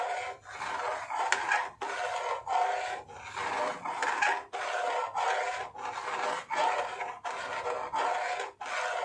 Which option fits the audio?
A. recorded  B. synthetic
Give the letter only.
A